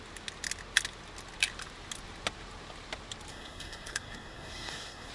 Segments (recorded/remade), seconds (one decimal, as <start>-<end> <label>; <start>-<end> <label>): 0.0-3.3 recorded; 3.3-5.1 remade